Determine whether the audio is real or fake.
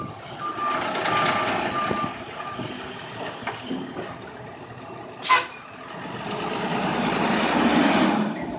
real